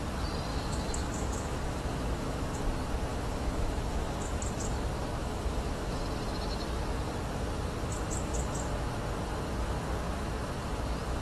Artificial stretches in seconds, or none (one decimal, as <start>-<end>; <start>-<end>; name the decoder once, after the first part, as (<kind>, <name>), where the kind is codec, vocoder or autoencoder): 0.5-2.6 (autoencoder, DAC-VAE); 3.1-4.3; 5.2-6.0